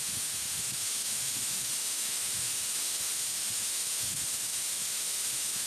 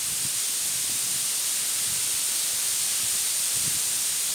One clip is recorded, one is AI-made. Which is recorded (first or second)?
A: second